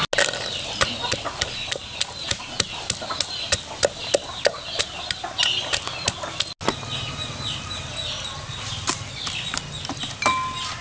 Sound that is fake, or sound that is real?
real